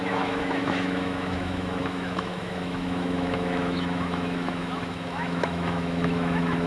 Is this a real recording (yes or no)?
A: no